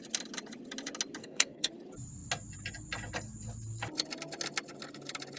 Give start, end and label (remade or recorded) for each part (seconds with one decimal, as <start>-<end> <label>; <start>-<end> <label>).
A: 0.0-1.2 recorded; 1.2-1.7 remade; 1.7-5.4 recorded